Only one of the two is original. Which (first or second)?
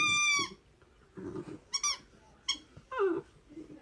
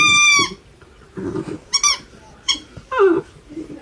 first